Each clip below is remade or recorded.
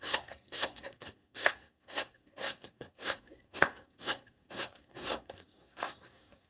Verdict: remade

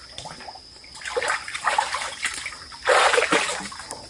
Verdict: recorded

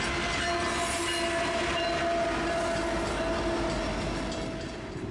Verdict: recorded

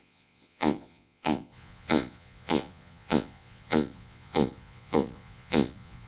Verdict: remade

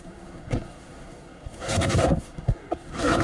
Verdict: remade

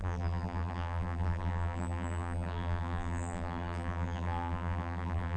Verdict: remade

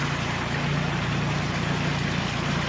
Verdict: recorded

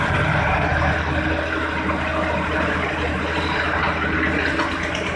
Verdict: recorded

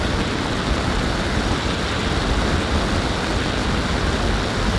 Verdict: recorded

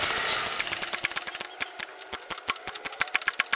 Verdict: recorded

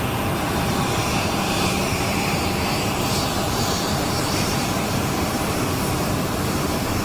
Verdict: remade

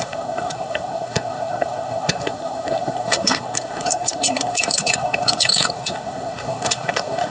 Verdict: remade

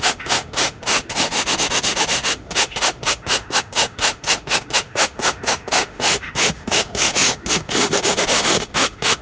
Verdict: remade